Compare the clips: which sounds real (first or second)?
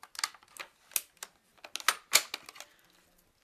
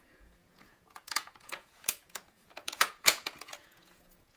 first